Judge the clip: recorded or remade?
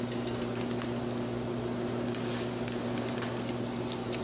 recorded